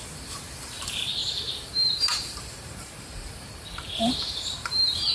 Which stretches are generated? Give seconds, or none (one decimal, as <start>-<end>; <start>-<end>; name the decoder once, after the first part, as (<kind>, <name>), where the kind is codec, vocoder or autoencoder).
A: 0.0-5.1 (vocoder, BigVGAN v2)